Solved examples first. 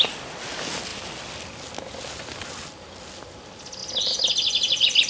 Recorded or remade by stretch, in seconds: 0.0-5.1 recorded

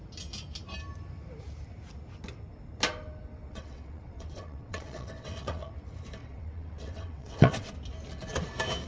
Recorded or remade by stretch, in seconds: 0.0-3.5 recorded; 3.5-5.7 remade; 5.7-6.2 recorded; 6.2-7.7 remade; 7.7-8.9 recorded

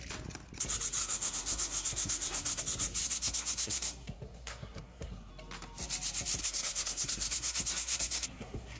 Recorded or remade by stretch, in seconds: 0.0-1.0 recorded; 1.0-2.6 remade; 2.6-3.0 recorded; 3.0-5.3 remade; 5.3-6.4 recorded; 6.4-8.8 remade

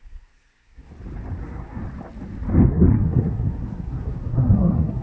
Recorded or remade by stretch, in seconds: 0.0-0.9 remade; 0.9-1.4 recorded; 1.4-1.8 remade; 1.8-2.7 recorded; 2.7-5.0 remade